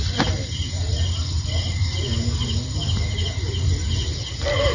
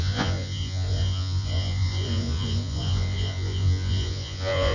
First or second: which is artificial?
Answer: second